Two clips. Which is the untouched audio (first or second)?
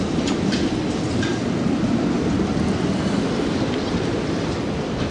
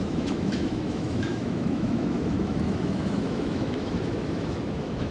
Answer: first